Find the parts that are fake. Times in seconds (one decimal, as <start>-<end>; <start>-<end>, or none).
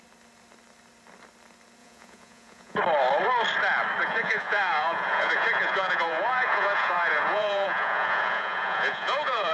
1.8-2.8; 4.0-9.5